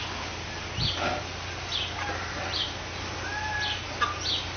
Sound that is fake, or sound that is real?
real